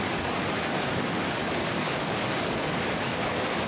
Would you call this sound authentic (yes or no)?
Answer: no